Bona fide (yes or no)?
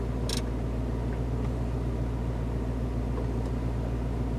yes